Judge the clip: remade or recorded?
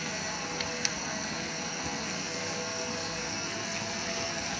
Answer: remade